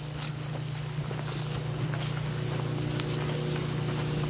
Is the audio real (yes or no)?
yes